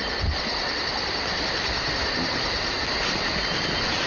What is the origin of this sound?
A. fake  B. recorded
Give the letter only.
B